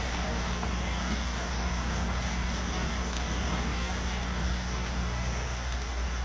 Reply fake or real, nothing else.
fake